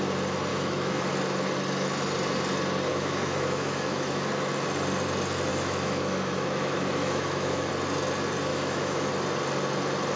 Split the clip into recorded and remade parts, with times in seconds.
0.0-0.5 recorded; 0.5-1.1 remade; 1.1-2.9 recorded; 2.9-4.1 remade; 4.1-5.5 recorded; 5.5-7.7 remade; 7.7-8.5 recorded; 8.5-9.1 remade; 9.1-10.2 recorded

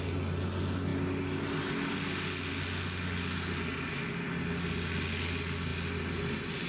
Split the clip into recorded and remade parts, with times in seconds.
0.0-6.7 recorded

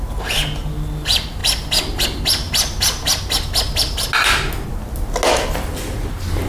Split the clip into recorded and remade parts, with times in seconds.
0.0-6.5 recorded

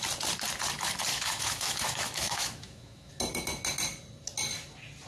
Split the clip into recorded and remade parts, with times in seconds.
0.0-1.1 recorded; 1.1-3.1 remade; 3.1-5.1 recorded

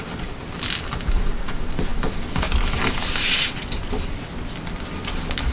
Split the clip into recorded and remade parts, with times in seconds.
0.0-5.5 recorded